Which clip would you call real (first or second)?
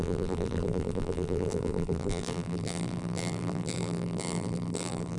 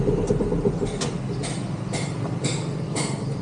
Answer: second